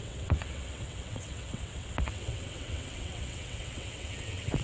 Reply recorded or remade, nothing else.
remade